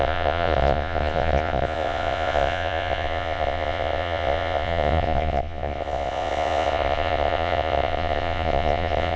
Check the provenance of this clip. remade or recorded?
remade